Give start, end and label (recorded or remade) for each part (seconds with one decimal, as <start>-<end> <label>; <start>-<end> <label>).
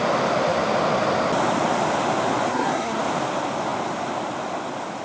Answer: 0.0-2.5 recorded; 2.5-3.0 remade; 3.0-5.0 recorded